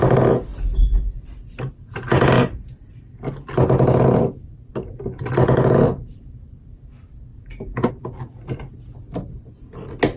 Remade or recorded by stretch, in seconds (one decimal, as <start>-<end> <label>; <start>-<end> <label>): 0.0-10.2 recorded